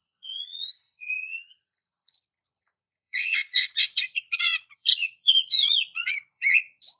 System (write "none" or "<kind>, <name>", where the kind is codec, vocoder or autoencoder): vocoder, Vocos